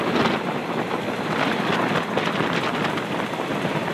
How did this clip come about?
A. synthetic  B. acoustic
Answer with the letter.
B